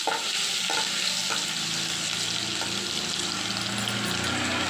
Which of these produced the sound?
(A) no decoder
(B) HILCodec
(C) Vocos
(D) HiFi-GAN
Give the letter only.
A